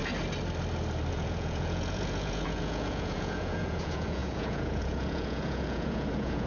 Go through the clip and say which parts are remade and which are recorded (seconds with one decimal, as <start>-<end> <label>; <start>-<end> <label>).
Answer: 0.0-1.1 recorded; 1.1-6.5 remade